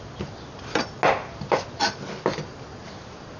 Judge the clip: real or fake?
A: real